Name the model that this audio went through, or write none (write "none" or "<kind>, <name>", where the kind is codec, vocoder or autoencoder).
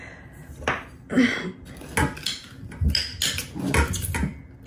none